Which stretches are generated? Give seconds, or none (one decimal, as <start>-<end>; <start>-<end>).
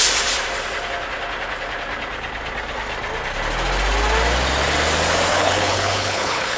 5.3-6.6